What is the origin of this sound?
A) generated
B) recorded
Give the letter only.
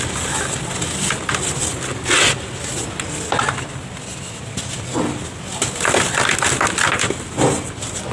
B